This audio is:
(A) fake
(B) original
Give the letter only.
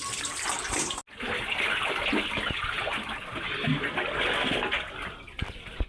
B